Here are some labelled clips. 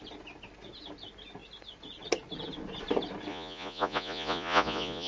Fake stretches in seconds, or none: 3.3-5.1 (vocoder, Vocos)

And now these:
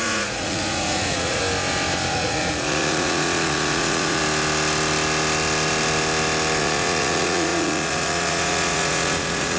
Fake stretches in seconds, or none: 0.0-1.4 (vocoder, Vocos); 2.1-4.2; 6.6-9.6

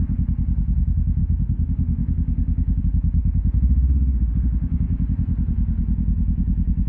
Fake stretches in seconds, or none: 1.2-2.8 (autoencoder, DAC-VAE); 3.2-4.8

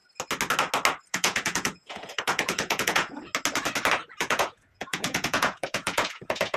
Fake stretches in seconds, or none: 1.1-3.3 (vocoder, Vocos); 4.2-6.6

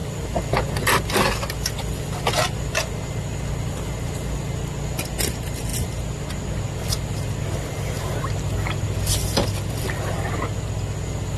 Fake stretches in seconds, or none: none

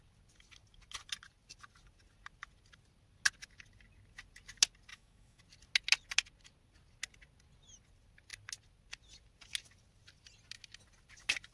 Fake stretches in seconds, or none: 4.9-5.4 (autoencoder, DAC-VAE)